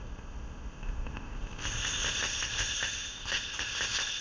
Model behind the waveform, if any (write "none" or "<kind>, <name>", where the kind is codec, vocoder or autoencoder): codec, ZipCodec